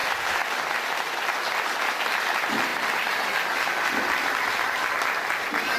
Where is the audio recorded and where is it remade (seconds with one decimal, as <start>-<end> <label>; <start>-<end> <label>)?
0.0-1.9 remade; 1.9-2.7 recorded; 2.7-4.9 remade; 4.9-5.8 recorded